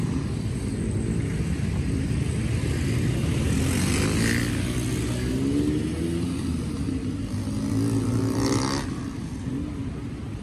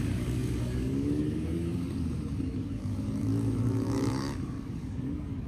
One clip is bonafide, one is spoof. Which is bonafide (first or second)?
first